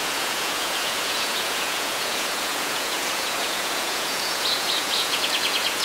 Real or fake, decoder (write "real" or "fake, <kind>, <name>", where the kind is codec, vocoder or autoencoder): fake, vocoder, Vocos